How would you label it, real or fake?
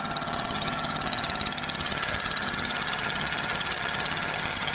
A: fake